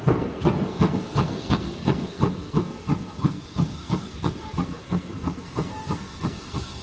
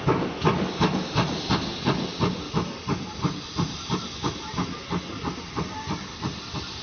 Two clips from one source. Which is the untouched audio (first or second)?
second